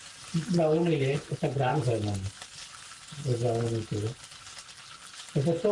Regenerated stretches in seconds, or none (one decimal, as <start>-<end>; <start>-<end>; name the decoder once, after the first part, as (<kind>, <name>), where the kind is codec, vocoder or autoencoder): none